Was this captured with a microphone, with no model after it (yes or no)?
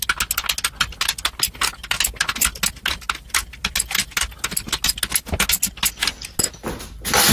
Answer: yes